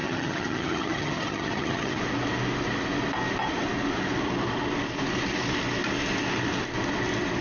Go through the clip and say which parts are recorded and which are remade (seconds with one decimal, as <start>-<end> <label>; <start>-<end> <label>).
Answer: 0.0-2.0 remade; 2.0-7.4 recorded